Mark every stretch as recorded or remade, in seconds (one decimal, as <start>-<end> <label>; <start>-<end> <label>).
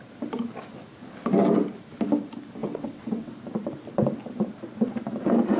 0.0-2.6 recorded; 2.6-3.3 remade; 3.3-5.6 recorded